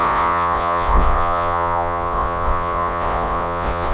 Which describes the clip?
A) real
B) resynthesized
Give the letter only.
B